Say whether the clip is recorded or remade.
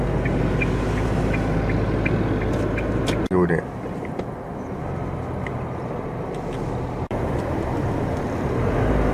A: recorded